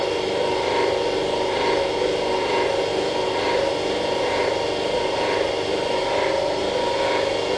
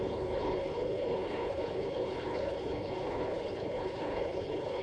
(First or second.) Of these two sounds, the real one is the first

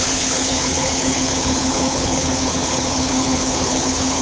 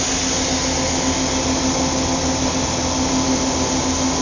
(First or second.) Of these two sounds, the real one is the second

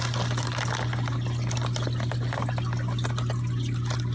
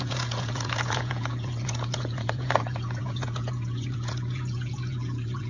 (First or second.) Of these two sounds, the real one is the first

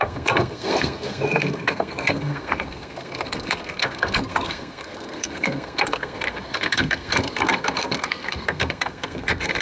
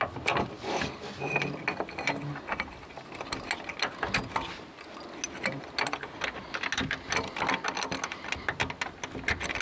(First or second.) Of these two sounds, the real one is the second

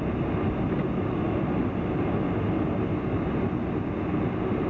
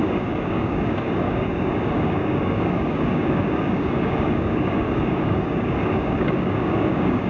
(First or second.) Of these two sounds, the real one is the first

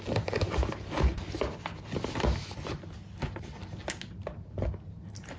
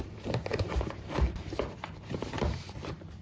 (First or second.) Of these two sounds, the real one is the first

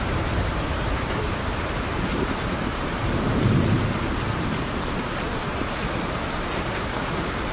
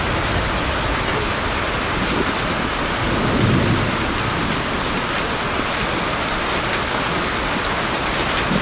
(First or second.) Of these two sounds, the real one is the second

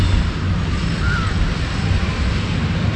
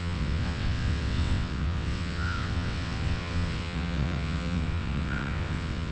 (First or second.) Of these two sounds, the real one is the first